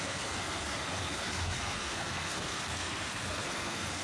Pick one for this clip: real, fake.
fake